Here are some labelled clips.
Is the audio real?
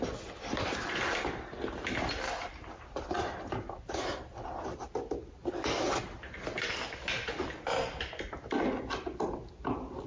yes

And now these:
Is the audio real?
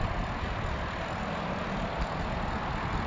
yes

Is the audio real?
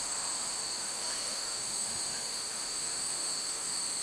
no